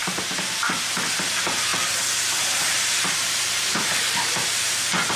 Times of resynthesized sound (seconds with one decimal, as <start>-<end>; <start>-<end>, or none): 0.0-1.0; 1.7-4.8